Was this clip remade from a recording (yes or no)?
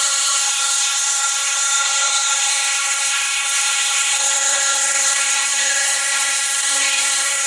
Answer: yes